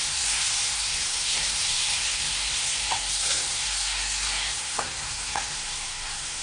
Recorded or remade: remade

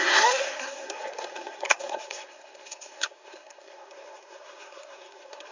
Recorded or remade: remade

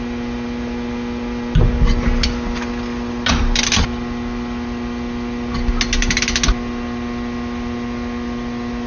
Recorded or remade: recorded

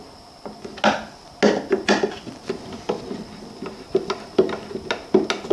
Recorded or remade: recorded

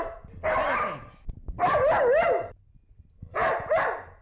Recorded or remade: recorded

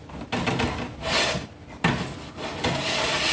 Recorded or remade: recorded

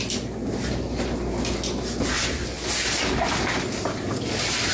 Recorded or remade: recorded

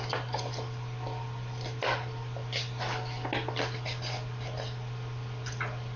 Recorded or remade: recorded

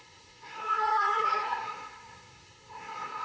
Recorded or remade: remade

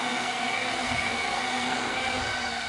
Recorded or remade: remade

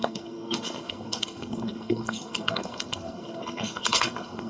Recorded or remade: remade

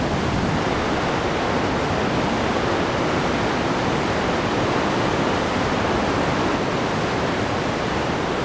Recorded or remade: recorded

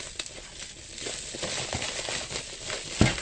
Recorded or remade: recorded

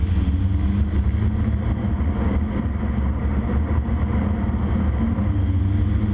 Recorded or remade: recorded